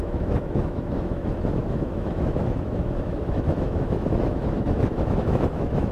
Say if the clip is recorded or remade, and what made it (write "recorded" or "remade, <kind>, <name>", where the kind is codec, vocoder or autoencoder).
remade, autoencoder, DAC-VAE